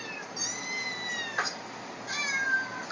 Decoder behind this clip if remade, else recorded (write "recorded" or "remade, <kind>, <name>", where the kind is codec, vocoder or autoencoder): recorded